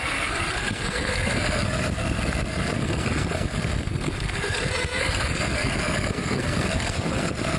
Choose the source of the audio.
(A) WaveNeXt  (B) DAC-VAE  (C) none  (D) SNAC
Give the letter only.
D